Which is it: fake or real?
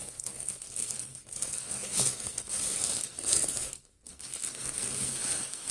fake